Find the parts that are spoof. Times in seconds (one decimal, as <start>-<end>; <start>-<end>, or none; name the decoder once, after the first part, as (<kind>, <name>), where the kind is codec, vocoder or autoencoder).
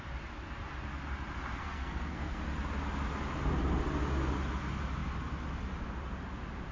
1.6-2.4 (codec, SNAC)